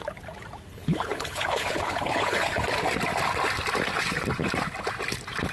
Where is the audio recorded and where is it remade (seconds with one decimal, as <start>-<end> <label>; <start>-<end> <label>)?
0.0-0.7 recorded; 0.7-2.5 remade; 2.5-5.5 recorded